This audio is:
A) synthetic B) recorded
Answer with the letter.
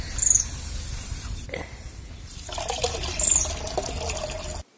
B